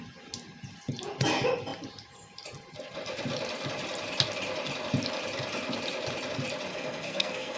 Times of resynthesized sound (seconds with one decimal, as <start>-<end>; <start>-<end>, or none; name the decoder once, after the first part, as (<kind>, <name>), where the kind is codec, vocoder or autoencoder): 6.7-7.6 (codec, SNAC)